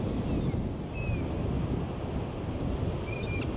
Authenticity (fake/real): real